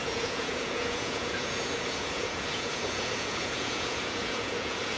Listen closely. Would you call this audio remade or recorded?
remade